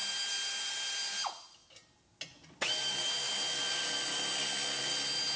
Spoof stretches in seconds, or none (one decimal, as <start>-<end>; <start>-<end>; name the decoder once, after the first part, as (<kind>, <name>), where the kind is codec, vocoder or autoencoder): none